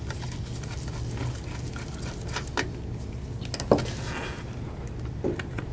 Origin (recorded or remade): recorded